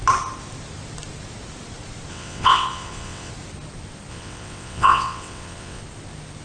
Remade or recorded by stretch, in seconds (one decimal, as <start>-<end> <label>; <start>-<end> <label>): 0.0-2.1 recorded; 2.1-3.3 remade; 3.3-4.1 recorded; 4.1-5.8 remade; 5.8-6.4 recorded